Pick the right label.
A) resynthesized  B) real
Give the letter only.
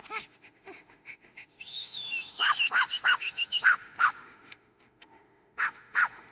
A